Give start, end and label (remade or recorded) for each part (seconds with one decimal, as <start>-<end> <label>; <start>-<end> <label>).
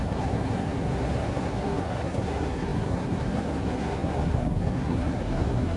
0.0-5.8 remade